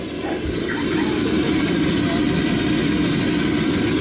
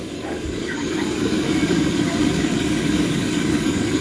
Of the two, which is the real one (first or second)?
first